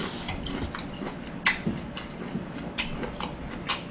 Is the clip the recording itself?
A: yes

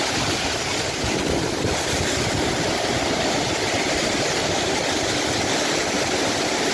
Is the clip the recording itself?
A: no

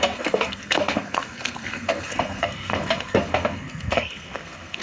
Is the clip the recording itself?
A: no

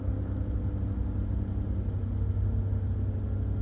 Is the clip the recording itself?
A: yes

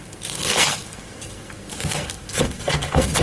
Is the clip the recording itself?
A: no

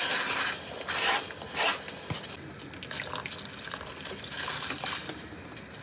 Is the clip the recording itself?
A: yes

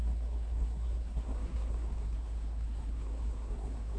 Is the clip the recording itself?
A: no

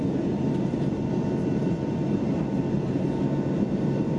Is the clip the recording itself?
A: no